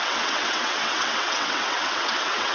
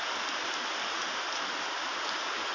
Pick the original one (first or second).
second